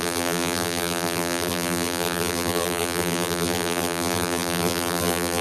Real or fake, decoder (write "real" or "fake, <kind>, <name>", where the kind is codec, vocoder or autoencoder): fake, vocoder, BigVGAN v2